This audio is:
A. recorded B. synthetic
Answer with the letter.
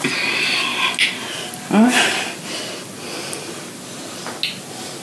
A